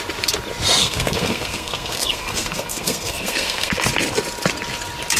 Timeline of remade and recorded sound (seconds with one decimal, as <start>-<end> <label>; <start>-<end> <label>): 0.0-0.8 recorded; 0.8-3.7 remade; 3.7-5.2 recorded